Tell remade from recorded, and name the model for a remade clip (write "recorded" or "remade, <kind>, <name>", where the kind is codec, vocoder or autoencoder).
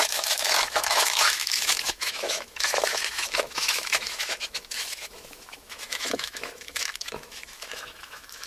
remade, autoencoder, DAC-VAE